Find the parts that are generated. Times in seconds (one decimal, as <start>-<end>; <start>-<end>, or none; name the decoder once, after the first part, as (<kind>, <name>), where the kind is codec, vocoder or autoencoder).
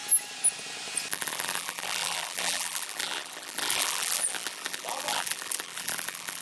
1.1-6.4 (vocoder, BigVGAN v2)